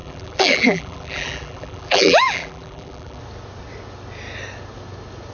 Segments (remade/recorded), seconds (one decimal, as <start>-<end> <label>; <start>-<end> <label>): 0.0-3.2 remade; 3.2-5.3 recorded